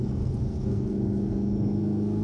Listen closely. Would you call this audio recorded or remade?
remade